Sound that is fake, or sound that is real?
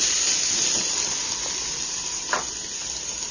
real